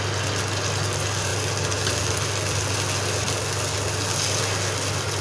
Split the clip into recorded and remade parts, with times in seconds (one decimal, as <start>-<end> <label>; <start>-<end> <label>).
0.0-5.2 recorded